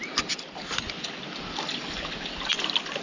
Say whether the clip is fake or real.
real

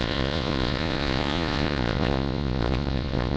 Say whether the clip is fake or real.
fake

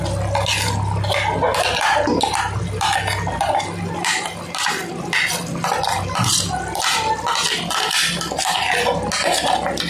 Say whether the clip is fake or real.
real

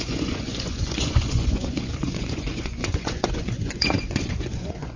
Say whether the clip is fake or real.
fake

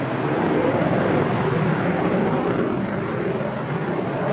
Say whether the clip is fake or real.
real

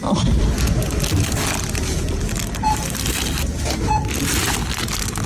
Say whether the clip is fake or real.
real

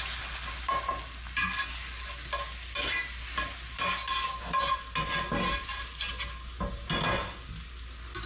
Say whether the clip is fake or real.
real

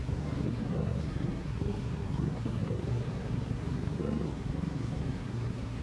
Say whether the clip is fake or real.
fake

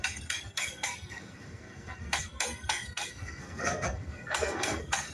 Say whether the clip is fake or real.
fake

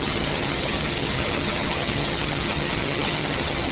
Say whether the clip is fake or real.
fake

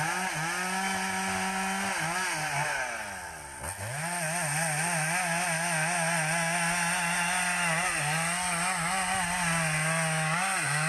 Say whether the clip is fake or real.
real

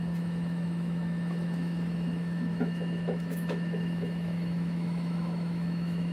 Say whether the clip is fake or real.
fake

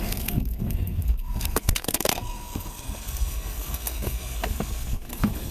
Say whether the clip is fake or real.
fake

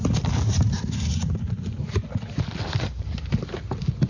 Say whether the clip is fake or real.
real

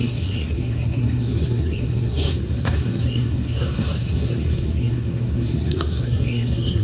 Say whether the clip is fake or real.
fake